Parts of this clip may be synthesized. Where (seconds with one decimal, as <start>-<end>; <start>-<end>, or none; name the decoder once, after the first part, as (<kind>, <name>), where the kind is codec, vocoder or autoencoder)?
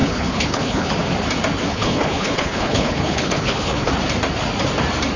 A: 0.0-0.9 (codec, HILCodec); 1.7-3.9